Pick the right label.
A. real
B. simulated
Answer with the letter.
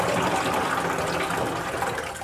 A